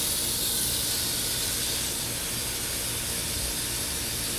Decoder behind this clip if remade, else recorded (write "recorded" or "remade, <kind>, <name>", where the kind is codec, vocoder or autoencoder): recorded